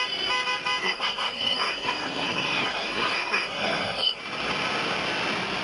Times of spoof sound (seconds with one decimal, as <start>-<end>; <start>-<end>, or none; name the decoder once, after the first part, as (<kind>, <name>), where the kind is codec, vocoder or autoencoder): 0.8-4.2 (codec, SNAC)